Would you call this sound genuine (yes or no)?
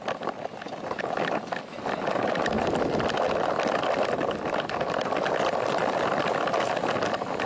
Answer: yes